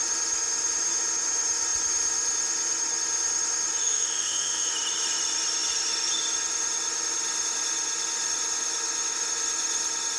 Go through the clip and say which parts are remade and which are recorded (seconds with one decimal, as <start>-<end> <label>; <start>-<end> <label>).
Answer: 0.0-3.8 recorded; 3.8-4.7 remade; 4.7-10.2 recorded